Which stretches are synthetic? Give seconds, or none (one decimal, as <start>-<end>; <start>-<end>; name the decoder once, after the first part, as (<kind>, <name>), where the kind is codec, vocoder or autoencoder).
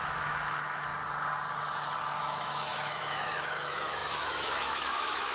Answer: 0.0-0.9 (autoencoder, DAC-VAE); 2.2-5.3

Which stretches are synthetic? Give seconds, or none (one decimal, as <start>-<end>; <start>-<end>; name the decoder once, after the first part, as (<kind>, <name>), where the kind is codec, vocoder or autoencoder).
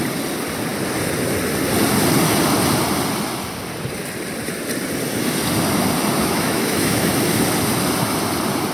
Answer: 6.2-7.1 (autoencoder, DAC-VAE)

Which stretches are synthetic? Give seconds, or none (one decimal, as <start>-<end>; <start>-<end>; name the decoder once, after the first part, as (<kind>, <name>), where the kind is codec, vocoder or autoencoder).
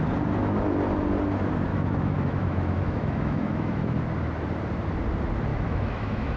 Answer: 1.7-4.0 (autoencoder, DAC-VAE); 5.5-6.4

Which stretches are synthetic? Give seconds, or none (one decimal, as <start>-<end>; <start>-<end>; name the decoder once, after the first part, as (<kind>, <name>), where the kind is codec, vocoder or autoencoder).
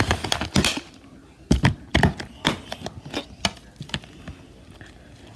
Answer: none